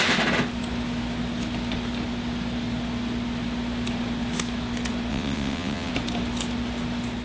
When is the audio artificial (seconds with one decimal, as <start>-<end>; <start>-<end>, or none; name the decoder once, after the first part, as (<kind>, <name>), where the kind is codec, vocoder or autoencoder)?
5.1-5.9 (vocoder, WaveNeXt)